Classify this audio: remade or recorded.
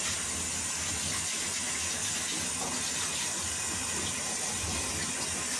recorded